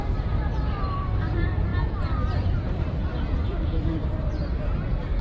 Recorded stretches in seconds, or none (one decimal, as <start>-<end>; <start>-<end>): none